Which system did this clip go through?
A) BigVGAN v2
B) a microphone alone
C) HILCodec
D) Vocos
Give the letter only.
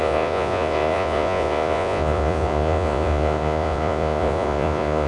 D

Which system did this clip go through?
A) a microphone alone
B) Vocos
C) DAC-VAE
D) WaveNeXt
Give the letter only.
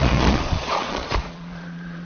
B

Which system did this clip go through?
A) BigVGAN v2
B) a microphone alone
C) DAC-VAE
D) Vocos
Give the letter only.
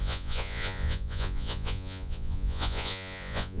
D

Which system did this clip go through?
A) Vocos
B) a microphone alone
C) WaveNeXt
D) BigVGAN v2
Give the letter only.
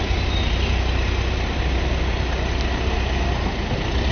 B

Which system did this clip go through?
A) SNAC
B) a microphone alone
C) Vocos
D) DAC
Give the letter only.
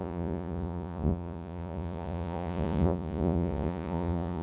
C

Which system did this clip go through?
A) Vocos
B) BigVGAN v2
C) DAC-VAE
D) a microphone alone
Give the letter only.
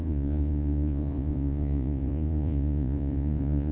A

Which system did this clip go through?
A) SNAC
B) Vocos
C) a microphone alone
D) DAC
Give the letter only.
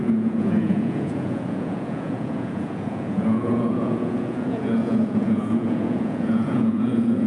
B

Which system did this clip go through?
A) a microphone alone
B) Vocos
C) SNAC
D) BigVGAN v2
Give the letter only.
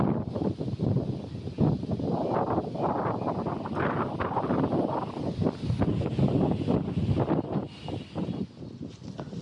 A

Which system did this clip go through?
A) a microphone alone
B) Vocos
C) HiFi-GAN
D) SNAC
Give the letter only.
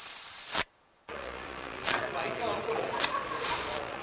B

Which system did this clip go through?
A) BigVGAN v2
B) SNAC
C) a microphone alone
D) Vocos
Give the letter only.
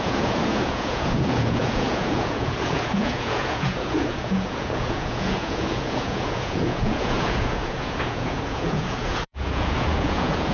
D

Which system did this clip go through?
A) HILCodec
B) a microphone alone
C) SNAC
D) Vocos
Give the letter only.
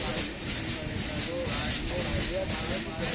B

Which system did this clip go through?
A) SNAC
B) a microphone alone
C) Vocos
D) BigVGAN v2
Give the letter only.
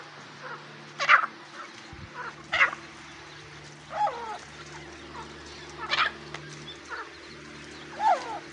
B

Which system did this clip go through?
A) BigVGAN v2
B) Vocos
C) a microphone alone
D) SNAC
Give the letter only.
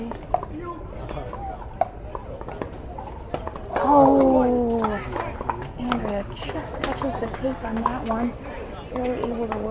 C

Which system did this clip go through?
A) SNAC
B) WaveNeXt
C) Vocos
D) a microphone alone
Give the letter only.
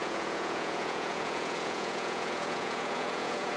C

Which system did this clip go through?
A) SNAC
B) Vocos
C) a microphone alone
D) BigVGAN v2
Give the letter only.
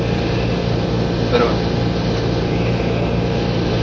C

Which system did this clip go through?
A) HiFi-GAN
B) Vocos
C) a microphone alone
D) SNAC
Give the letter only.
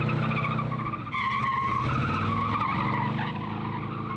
C